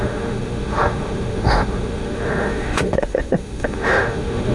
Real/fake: fake